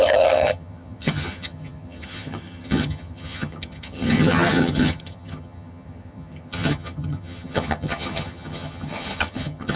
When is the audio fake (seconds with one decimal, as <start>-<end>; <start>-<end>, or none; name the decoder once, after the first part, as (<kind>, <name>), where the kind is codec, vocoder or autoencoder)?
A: 0.0-9.8 (vocoder, HiFi-GAN)